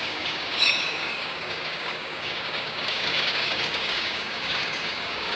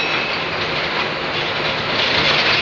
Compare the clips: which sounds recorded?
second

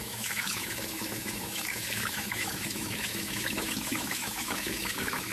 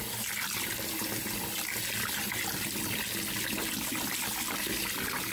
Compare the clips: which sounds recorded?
second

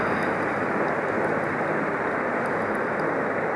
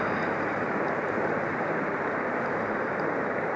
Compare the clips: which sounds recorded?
first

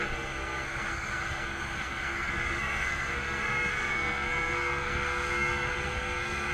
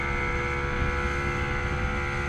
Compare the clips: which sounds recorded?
second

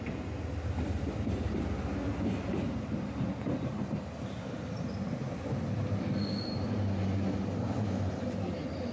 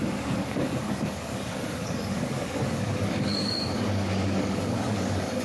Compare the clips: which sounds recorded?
first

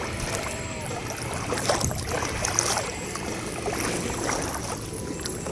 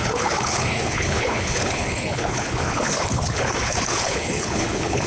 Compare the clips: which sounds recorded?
first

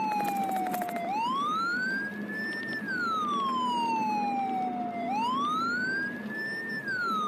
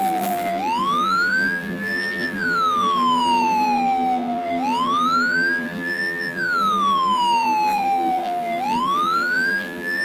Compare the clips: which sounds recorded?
first